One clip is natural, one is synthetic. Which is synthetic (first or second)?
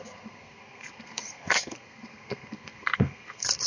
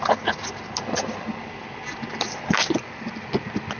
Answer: first